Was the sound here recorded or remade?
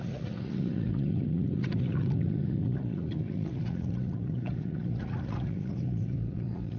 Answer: remade